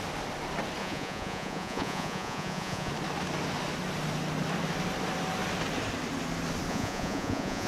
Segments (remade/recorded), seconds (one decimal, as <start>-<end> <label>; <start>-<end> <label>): 0.0-0.8 recorded; 0.8-2.9 remade; 2.9-6.7 recorded; 6.7-7.7 remade